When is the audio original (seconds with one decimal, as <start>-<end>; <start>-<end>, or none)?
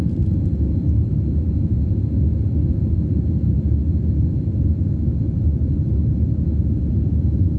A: 0.0-7.6